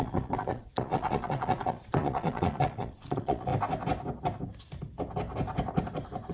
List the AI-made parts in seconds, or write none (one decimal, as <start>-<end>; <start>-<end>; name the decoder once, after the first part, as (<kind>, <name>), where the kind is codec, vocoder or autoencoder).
0.0-3.5 (vocoder, Vocos)